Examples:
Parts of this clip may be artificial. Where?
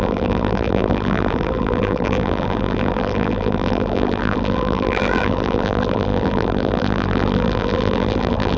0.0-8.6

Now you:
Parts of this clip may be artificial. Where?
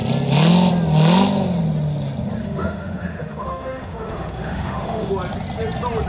2.4-5.1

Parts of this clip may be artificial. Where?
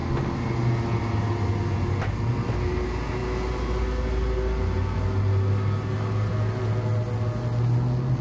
none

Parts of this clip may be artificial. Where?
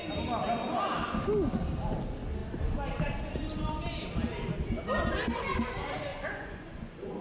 6.1-7.2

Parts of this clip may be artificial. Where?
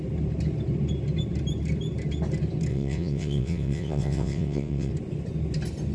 2.7-4.9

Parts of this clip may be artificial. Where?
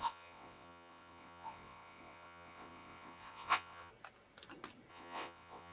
0.0-3.9; 4.9-5.7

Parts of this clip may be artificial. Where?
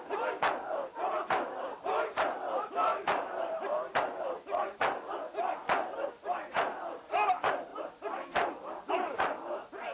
none